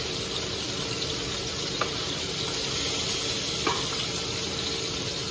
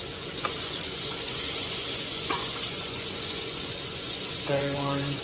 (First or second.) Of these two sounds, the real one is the first